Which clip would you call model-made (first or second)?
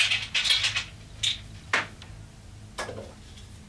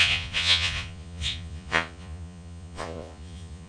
second